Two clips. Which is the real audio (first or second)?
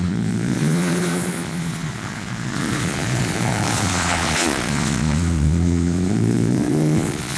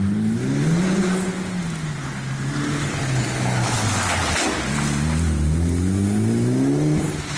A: second